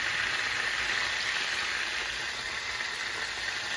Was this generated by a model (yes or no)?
no